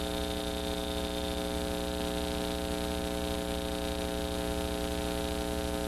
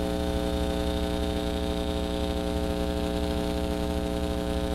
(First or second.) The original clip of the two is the first